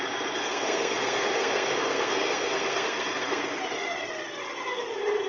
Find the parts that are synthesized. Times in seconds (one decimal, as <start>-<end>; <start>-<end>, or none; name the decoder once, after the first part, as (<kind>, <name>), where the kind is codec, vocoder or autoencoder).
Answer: 0.4-3.6 (codec, SNAC)

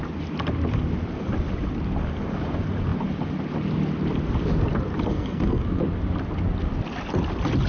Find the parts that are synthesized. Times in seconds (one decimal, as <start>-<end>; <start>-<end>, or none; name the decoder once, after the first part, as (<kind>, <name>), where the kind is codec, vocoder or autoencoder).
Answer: 5.1-5.8 (codec, SNAC)

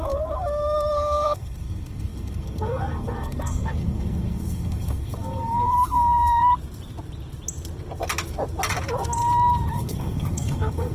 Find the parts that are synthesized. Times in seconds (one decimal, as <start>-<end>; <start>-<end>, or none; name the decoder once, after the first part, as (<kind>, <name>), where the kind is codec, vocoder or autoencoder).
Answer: 0.0-6.4 (codec, SNAC); 9.7-10.9

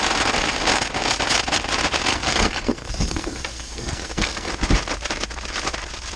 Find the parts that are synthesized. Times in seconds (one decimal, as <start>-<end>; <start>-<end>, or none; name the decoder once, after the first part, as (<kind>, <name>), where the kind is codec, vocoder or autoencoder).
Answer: 2.1-4.5 (codec, SNAC)

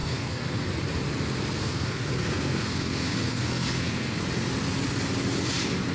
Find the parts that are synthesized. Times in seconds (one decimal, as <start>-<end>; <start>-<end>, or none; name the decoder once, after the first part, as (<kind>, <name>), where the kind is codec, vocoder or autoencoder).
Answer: 0.0-0.7 (codec, SNAC); 1.6-4.2